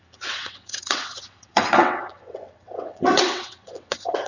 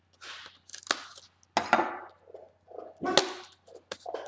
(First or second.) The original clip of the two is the second